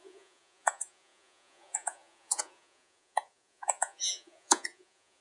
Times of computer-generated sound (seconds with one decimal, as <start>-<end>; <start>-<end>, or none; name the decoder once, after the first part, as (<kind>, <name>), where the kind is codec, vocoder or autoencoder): 0.0-5.2 (vocoder, Vocos)